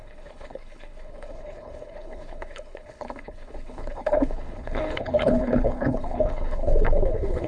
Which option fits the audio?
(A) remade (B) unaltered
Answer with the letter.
A